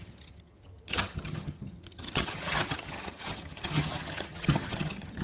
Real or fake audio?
fake